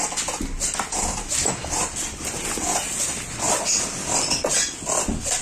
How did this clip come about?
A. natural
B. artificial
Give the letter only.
A